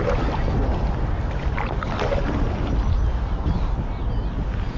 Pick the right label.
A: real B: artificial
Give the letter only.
A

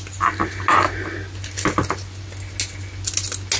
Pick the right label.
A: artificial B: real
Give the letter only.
B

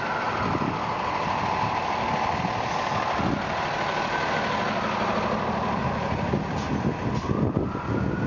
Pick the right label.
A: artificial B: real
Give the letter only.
B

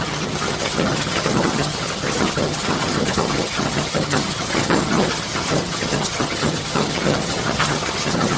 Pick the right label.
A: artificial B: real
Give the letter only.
A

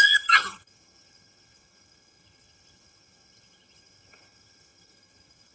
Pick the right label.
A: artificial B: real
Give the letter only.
A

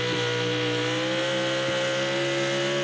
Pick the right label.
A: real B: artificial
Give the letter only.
A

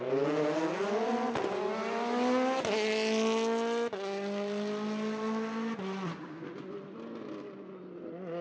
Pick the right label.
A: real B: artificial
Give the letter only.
A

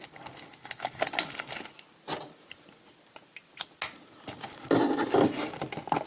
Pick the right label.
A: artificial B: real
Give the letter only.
B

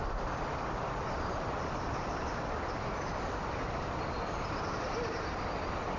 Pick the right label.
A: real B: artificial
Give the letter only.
A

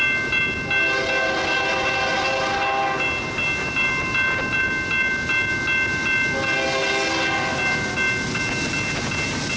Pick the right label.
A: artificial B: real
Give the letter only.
B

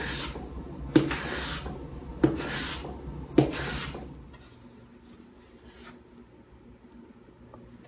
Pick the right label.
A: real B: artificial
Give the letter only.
A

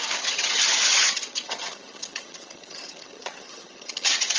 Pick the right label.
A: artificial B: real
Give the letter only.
A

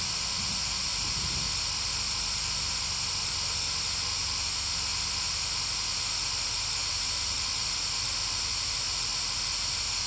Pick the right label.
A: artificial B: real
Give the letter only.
B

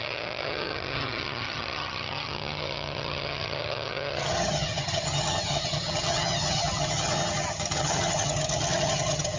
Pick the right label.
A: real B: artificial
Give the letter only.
B